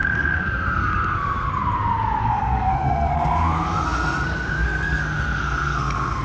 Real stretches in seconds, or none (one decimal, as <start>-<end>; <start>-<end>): 1.5-2.2